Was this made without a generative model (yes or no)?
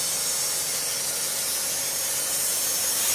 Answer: yes